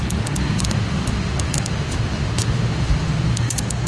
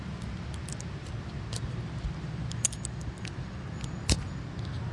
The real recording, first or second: second